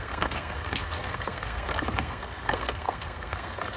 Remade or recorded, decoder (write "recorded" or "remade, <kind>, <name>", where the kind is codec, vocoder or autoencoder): remade, codec, SNAC